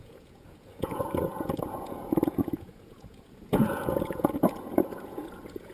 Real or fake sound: fake